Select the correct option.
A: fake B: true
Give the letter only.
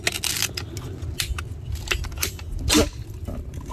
B